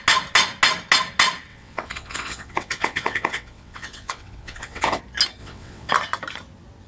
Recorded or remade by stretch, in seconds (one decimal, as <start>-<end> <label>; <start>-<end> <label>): 0.0-1.5 recorded; 1.5-5.0 remade; 5.0-5.4 recorded; 5.4-5.9 remade; 5.9-6.9 recorded